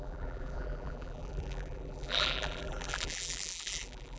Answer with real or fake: fake